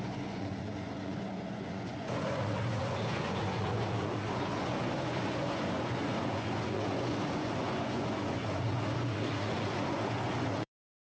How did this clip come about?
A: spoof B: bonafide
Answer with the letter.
A